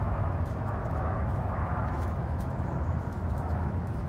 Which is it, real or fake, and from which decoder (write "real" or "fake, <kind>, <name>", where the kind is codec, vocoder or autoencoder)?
fake, autoencoder, DAC-VAE